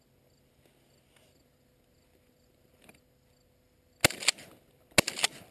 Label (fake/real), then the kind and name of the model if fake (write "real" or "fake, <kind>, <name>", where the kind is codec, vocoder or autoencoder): real